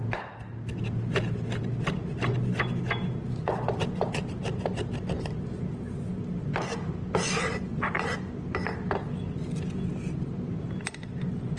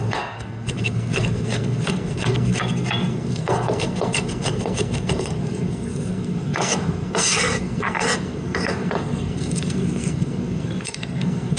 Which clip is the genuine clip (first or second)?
first